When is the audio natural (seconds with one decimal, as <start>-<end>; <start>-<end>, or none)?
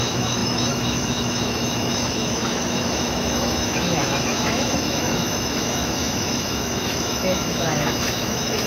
none